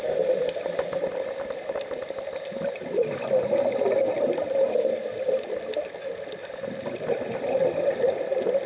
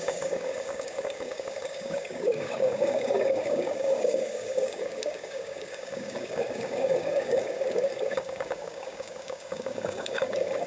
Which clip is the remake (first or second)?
second